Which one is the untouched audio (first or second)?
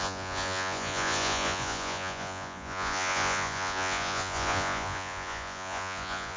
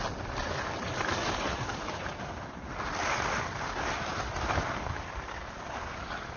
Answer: second